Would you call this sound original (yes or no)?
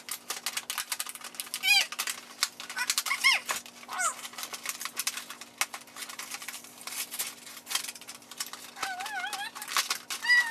yes